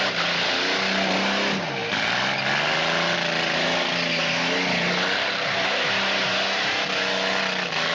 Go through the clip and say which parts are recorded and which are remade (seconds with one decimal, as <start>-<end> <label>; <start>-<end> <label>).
0.0-7.9 recorded